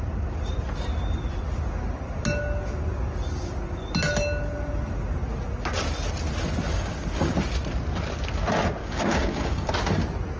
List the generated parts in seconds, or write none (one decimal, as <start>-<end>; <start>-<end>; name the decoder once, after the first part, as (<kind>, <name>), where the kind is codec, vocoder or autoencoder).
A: 6.7-7.3 (codec, DAC); 8.8-9.7